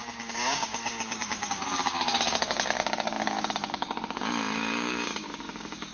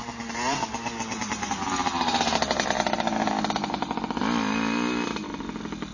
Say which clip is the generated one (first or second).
first